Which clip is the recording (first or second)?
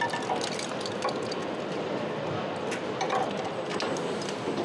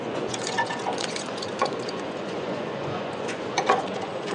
first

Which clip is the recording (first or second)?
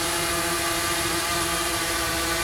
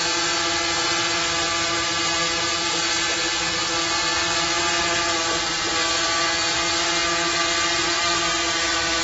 second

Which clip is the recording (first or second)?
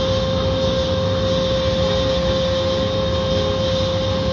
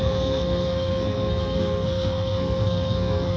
first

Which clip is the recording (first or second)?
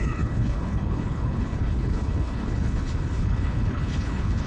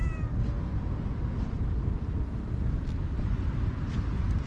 second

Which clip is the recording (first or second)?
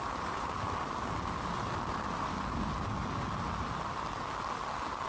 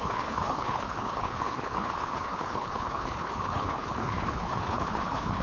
first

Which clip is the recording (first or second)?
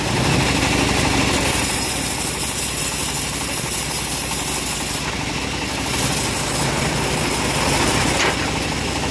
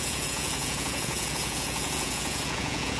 first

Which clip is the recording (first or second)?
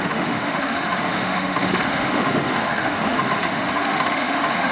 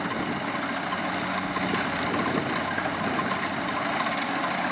second